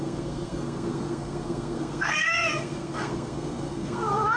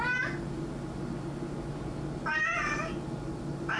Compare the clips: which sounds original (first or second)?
second